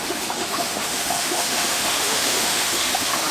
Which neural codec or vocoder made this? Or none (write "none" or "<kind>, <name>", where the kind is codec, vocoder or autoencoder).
autoencoder, DAC-VAE